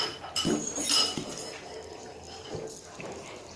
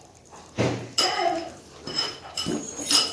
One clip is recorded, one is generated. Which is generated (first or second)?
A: second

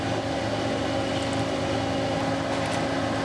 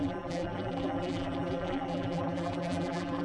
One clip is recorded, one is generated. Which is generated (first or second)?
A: second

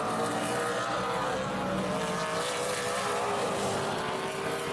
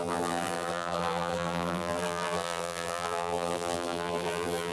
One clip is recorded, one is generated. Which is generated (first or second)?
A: second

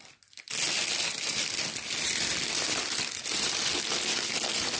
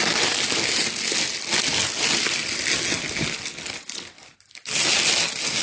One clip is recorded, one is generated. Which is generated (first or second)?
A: first